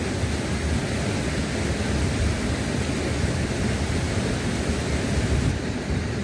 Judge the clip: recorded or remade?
recorded